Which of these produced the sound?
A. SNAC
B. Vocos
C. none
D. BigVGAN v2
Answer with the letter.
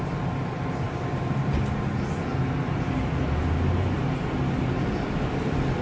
C